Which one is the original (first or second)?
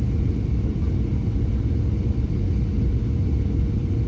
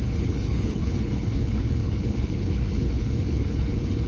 first